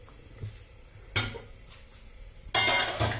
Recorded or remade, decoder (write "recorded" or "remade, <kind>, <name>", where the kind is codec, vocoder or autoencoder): recorded